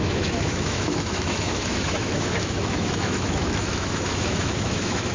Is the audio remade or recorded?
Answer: remade